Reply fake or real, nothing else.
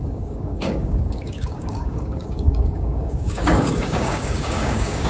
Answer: fake